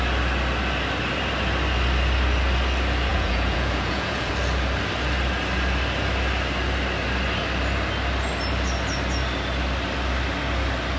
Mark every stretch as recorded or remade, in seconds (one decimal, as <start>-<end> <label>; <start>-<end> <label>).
0.0-3.1 recorded; 3.1-4.3 remade; 4.3-11.0 recorded